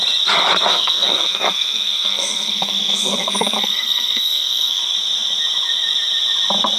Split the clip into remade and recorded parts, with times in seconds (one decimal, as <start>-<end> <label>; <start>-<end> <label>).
0.0-0.7 recorded; 0.7-4.8 remade; 4.8-6.8 recorded